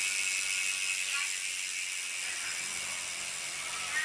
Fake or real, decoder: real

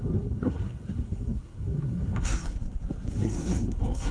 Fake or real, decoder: fake, codec, SNAC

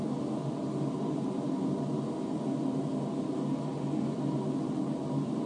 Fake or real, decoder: real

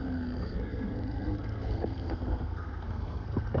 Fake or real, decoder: fake, codec, SNAC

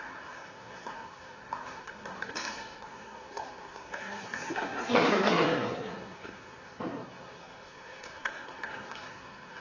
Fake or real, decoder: fake, codec, SNAC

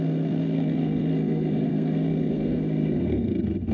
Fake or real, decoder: fake, codec, SNAC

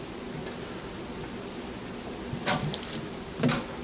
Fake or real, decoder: real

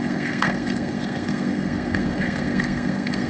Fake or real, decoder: fake, codec, SNAC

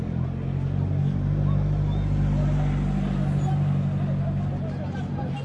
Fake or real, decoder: real